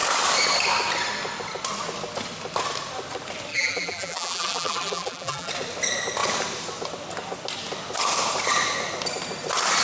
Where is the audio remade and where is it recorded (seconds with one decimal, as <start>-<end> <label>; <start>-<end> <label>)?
0.0-3.5 recorded; 3.5-5.5 remade; 5.5-9.8 recorded